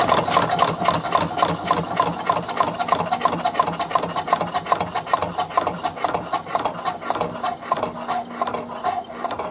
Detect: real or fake real